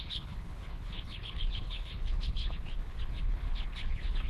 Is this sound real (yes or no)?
no